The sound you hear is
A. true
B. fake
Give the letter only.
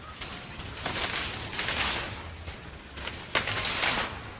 A